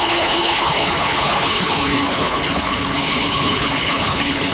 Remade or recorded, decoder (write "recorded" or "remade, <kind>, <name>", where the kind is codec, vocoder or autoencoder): remade, codec, HILCodec